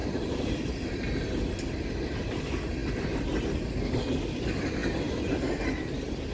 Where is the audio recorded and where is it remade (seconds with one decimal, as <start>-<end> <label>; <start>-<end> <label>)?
0.0-1.0 remade; 1.0-6.3 recorded